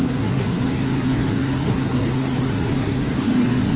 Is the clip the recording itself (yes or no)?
no